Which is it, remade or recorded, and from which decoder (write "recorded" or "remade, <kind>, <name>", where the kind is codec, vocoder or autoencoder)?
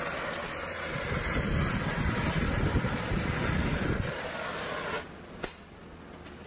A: recorded